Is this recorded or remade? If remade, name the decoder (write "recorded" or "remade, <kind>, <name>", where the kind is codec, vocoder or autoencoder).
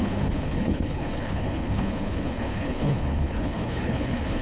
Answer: remade, codec, HILCodec